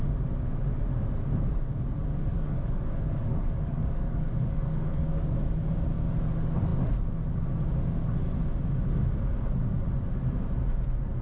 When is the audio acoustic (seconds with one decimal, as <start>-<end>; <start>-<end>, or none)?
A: 0.0-2.3; 5.4-11.2